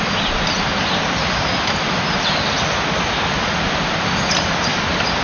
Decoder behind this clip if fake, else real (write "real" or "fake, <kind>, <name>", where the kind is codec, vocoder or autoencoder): real